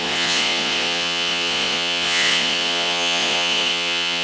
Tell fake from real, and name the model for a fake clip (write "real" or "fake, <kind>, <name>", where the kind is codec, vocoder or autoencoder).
fake, vocoder, Vocos